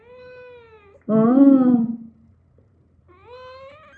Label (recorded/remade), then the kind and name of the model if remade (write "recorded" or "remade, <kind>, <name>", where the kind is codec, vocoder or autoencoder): recorded